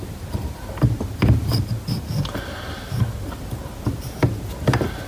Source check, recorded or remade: recorded